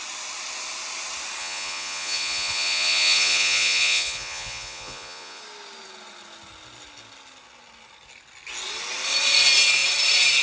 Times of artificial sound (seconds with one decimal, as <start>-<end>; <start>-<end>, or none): 1.4-5.4